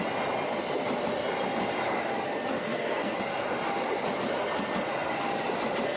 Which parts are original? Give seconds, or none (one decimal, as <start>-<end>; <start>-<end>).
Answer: 0.0-2.5; 3.2-6.0